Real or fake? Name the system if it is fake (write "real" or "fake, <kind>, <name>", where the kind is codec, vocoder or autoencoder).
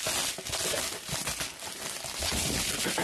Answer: real